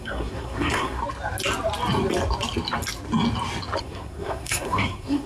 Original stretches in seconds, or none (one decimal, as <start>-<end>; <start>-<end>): 1.0-3.8